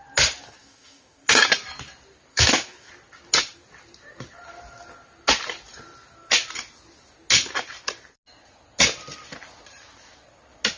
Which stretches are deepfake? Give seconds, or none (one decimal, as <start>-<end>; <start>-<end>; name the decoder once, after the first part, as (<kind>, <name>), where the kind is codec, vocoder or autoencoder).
0.6-1.4 (autoencoder, DAC-VAE); 2.3-2.9